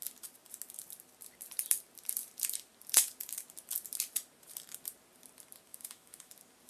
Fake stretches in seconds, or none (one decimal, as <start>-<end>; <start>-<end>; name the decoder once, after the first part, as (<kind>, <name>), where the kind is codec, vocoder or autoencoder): 5.7-6.3 (autoencoder, DAC-VAE)